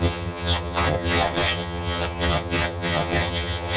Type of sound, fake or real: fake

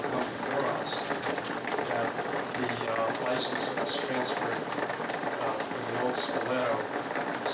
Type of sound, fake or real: real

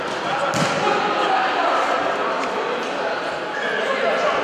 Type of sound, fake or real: real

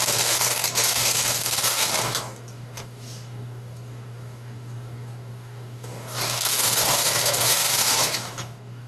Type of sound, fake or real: fake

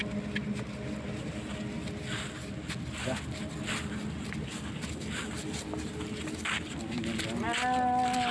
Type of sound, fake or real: real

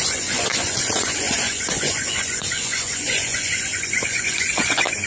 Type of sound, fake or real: fake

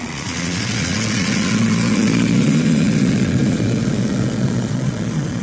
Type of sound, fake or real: fake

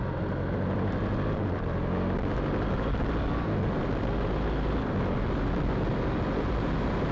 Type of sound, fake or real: real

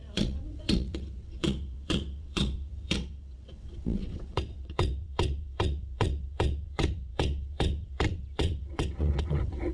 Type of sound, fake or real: fake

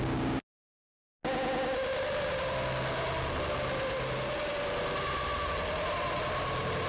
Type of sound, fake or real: real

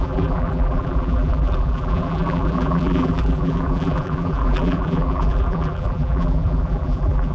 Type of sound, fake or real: fake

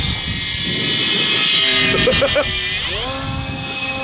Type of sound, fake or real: real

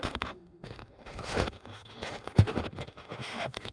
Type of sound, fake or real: fake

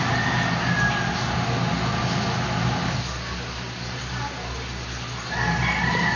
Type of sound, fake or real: real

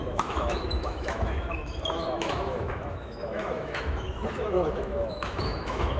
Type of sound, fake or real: fake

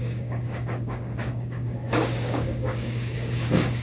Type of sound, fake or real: fake